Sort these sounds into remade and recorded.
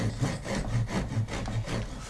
recorded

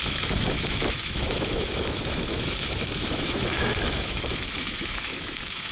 remade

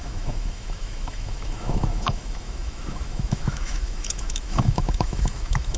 remade